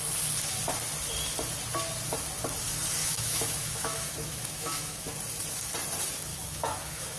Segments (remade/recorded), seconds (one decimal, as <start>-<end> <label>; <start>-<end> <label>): 0.0-3.0 recorded; 3.0-5.1 remade; 5.1-6.3 recorded; 6.3-7.2 remade